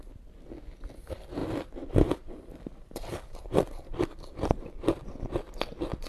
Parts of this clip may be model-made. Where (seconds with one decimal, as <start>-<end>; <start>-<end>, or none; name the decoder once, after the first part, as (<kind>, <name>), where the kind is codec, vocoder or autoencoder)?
1.4-5.1 (vocoder, BigVGAN v2)